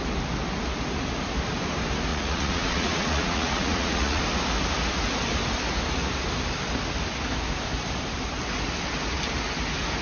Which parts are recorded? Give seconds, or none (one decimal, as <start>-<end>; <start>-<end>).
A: 0.0-2.1; 4.2-10.0